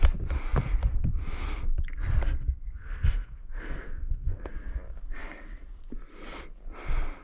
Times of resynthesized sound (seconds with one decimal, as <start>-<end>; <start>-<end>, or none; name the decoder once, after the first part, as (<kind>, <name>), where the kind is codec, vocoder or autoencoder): 2.8-4.5 (codec, SNAC)